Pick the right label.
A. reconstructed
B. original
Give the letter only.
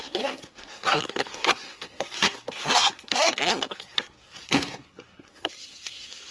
A